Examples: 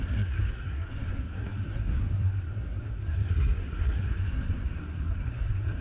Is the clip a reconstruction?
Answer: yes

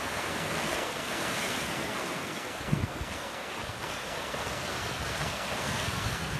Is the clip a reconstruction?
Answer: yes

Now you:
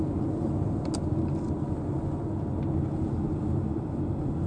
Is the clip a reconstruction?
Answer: no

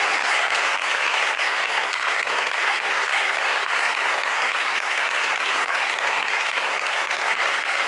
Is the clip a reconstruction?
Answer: yes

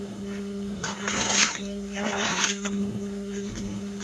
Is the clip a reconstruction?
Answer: yes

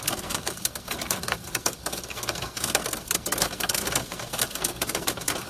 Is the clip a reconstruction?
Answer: yes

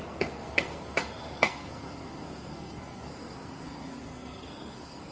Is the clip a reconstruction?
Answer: yes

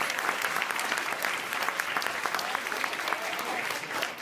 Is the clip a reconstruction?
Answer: no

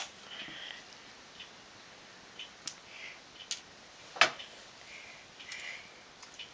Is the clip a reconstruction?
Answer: no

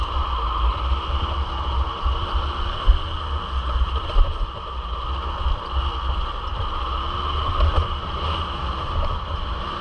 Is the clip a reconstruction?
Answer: no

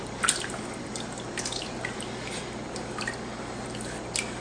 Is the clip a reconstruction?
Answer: no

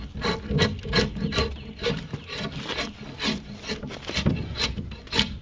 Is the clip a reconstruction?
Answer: no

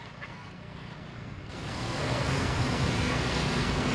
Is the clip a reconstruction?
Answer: yes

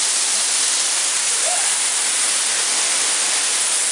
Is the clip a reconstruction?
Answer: no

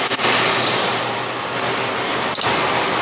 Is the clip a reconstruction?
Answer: no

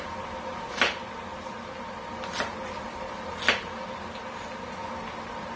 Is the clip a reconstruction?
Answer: no